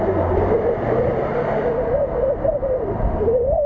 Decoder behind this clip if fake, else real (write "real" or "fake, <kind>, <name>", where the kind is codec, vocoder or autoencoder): real